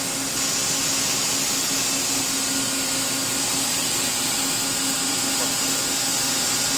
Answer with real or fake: real